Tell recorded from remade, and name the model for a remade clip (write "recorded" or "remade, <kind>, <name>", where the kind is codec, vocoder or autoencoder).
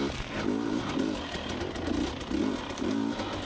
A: recorded